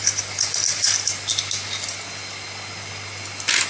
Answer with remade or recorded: recorded